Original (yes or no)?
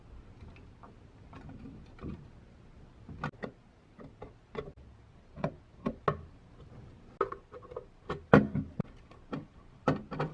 yes